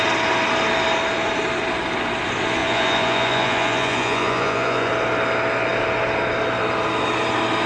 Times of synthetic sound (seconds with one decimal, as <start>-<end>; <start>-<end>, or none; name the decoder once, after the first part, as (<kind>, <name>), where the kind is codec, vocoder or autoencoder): 2.6-4.9 (vocoder, Vocos)